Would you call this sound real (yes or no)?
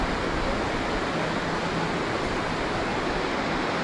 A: yes